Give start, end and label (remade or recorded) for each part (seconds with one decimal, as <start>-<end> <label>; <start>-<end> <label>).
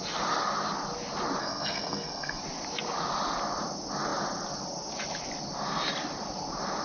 0.0-1.4 recorded; 1.4-2.4 remade; 2.4-6.8 recorded